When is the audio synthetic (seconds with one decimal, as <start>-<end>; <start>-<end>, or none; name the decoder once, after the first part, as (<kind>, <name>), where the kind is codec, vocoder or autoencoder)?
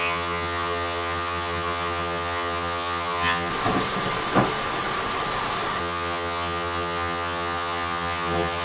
0.0-3.5 (vocoder, HiFi-GAN); 5.8-8.6